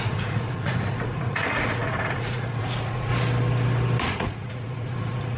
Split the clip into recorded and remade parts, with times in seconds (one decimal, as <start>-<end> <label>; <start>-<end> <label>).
0.0-3.1 remade; 3.1-4.0 recorded; 4.0-5.4 remade